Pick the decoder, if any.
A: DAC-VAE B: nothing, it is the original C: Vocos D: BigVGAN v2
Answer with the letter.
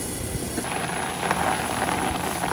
B